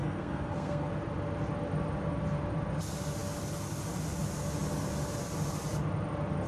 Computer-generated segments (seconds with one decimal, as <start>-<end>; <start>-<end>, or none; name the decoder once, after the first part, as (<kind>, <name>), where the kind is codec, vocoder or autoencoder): 0.0-0.9 (codec, SNAC)